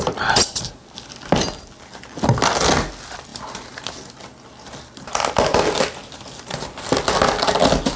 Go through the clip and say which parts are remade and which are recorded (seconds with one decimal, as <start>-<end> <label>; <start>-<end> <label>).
0.0-8.0 recorded